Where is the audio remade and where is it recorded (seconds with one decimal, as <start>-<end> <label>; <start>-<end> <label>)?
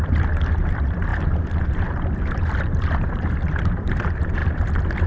0.0-5.1 recorded